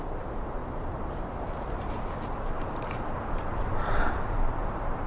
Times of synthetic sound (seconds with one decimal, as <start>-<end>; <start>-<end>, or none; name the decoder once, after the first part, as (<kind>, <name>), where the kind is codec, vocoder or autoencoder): 0.0-5.1 (vocoder, BigVGAN v2)